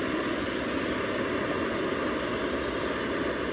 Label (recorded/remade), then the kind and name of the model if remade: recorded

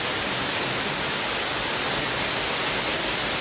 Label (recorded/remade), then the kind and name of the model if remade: recorded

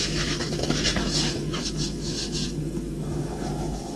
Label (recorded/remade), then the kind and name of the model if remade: remade, autoencoder, DAC-VAE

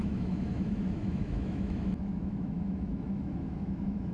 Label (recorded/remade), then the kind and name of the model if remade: remade, autoencoder, DAC-VAE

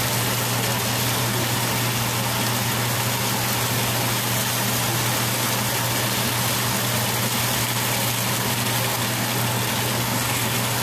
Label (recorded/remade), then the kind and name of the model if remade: recorded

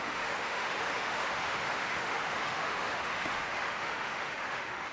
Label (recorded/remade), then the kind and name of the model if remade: remade, autoencoder, DAC-VAE